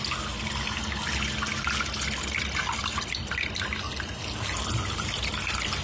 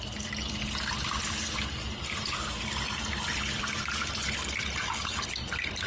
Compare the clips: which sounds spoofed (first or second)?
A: second